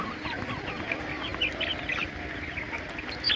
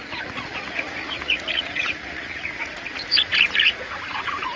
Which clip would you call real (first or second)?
first